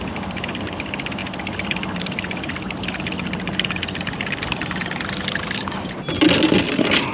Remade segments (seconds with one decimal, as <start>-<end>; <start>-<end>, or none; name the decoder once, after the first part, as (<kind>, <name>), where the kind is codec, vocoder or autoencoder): none